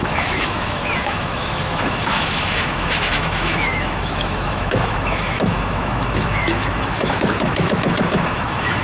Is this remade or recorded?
remade